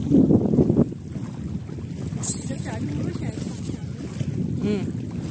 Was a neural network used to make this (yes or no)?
no